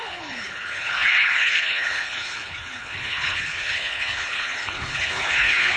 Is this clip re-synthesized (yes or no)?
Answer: yes